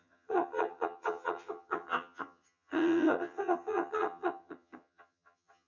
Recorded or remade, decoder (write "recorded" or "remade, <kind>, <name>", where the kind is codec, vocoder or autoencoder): remade, vocoder, HiFi-GAN